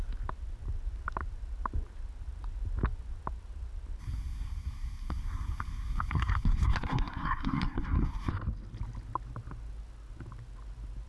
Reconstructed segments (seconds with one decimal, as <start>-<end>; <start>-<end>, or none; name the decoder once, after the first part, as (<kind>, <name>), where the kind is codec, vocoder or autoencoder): 4.0-8.3 (codec, SNAC)